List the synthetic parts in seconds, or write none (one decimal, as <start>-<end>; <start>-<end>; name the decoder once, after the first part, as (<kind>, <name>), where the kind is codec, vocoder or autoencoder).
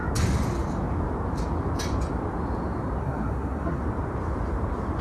3.0-3.8 (codec, SNAC)